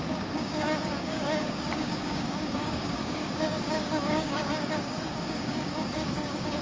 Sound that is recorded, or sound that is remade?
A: remade